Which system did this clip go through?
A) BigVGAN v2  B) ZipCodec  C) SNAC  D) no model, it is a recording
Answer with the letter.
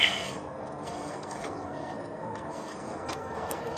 C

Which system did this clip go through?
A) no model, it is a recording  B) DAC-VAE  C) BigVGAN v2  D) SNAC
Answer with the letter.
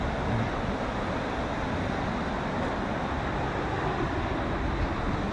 A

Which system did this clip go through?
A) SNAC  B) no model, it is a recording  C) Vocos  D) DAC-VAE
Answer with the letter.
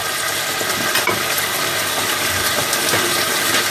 B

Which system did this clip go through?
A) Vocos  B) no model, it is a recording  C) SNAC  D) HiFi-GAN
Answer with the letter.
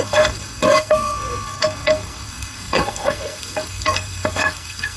C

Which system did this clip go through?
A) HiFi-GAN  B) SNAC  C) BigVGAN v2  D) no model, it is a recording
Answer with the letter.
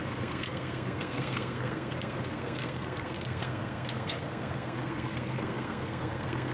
B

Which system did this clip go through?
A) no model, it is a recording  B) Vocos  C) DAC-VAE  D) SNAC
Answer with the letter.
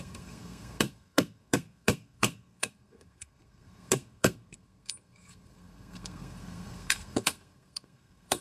D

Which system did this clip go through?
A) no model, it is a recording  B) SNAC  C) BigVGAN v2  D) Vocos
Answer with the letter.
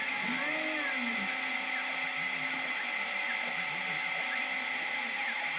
A